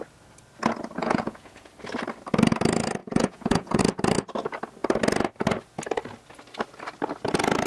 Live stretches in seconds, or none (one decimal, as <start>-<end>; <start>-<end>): 0.0-1.0; 1.7-3.0; 3.8-7.7